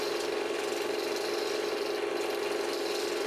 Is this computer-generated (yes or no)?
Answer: no